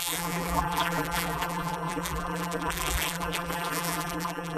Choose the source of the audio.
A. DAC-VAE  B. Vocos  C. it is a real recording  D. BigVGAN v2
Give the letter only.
D